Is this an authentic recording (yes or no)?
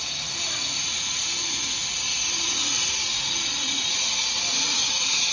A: no